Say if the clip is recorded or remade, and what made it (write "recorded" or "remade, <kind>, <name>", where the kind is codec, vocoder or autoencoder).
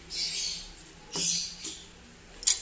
recorded